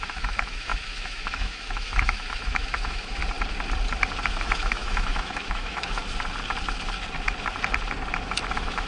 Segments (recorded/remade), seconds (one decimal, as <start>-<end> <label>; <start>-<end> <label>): 0.0-3.2 remade; 3.2-4.4 recorded; 4.4-6.0 remade; 6.0-8.5 recorded; 8.5-8.9 remade